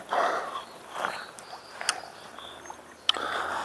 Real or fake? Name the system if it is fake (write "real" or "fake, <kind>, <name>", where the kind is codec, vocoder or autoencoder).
real